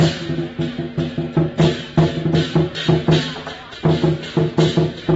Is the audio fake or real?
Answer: real